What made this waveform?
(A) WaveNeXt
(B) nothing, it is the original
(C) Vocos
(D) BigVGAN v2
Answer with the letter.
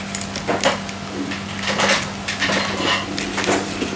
B